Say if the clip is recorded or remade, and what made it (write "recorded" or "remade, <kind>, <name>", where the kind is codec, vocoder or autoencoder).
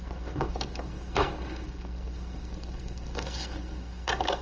remade, codec, SNAC